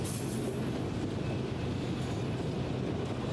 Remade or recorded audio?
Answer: recorded